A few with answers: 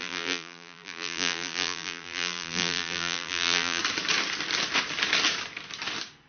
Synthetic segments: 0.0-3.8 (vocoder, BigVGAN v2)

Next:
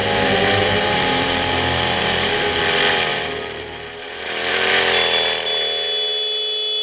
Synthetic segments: 0.0-2.6 (vocoder, BigVGAN v2); 3.1-4.7

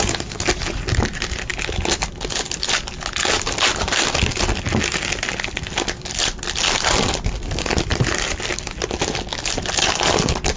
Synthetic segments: 7.9-9.1 (vocoder, BigVGAN v2)

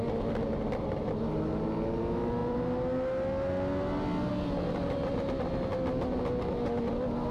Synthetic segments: none

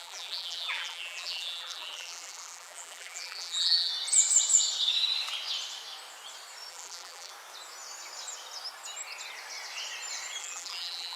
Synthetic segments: 0.0-3.9 (vocoder, BigVGAN v2); 6.7-7.3; 10.4-11.2

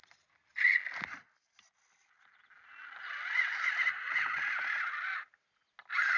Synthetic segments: none

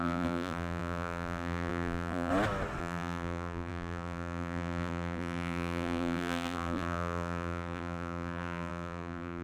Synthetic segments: 0.0-2.3 (vocoder, BigVGAN v2); 2.8-9.4